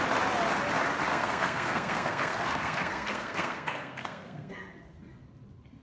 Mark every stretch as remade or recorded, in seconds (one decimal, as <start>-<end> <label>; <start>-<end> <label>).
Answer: 0.0-1.1 recorded; 1.1-4.5 remade; 4.5-5.8 recorded